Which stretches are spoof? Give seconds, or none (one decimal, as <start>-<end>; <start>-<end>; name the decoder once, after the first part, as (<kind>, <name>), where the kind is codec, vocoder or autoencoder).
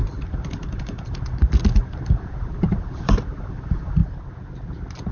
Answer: 0.0-4.0 (vocoder, BigVGAN v2)